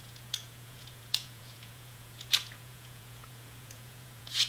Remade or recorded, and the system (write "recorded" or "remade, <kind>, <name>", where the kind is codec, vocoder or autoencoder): remade, vocoder, Vocos